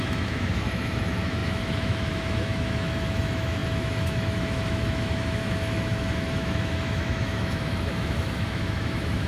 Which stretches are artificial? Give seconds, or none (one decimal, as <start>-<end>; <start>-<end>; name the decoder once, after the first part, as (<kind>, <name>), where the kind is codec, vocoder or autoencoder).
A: 0.0-9.3 (autoencoder, DAC-VAE)